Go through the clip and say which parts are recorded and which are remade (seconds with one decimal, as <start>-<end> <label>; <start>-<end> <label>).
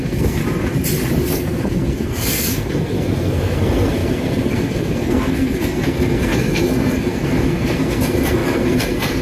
0.0-0.4 remade; 0.4-1.2 recorded; 1.2-9.2 remade